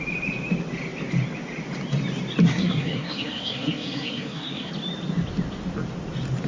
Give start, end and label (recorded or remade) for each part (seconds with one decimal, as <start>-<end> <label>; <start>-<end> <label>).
0.0-2.5 recorded; 2.5-4.7 remade; 4.7-6.5 recorded